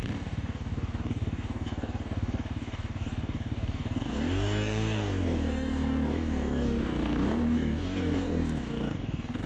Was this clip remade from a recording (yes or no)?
yes